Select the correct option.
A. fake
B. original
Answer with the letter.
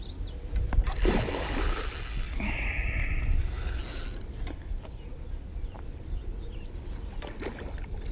B